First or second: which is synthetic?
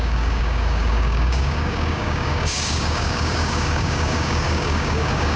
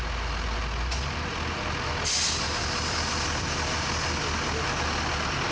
first